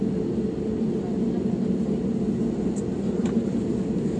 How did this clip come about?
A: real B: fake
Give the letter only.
A